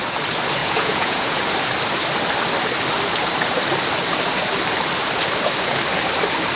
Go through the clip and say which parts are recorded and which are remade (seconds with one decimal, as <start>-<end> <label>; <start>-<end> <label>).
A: 0.0-0.6 recorded; 0.6-1.4 remade; 1.4-6.5 recorded